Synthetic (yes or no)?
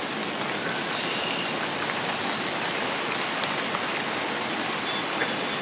no